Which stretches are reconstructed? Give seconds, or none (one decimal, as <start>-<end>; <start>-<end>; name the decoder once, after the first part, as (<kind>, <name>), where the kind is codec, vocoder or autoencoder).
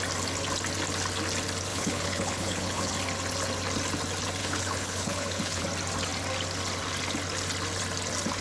1.7-2.9 (codec, HILCodec); 4.4-5.6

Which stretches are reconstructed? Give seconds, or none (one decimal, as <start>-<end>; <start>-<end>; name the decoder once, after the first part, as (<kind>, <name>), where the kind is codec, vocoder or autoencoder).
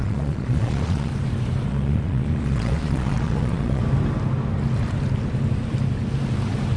0.0-1.1 (vocoder, Vocos); 1.7-3.8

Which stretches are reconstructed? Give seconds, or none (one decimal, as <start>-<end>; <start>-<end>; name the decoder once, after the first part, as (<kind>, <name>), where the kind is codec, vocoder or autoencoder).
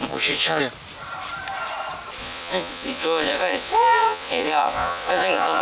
0.0-0.6 (vocoder, Vocos); 2.2-5.6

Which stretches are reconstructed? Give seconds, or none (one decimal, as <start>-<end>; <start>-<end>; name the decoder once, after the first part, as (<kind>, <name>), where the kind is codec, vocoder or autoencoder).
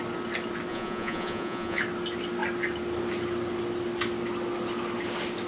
0.7-1.8 (vocoder, Vocos)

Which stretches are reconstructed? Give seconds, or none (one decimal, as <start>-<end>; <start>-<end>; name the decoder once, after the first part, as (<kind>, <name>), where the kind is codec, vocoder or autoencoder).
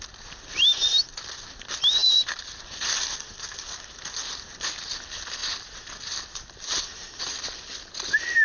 2.0-2.9 (vocoder, BigVGAN v2)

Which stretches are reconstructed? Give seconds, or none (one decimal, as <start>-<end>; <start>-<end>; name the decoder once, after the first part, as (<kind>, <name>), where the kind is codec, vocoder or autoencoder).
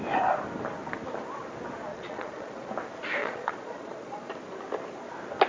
1.9-2.7 (vocoder, Vocos); 3.2-4.3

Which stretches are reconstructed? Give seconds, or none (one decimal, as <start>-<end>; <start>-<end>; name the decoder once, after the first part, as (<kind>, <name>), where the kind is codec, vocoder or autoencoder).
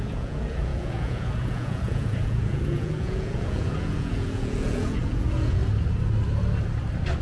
0.0-5.6 (vocoder, Vocos)